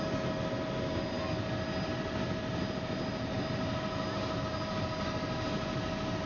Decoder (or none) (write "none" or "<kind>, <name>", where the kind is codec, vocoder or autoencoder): none